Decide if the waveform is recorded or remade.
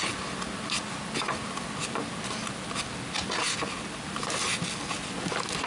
recorded